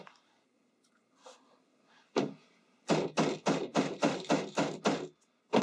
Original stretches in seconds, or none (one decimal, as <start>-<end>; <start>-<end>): 0.0-3.7; 4.4-5.6